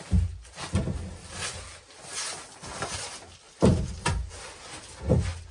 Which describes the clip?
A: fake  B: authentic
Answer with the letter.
B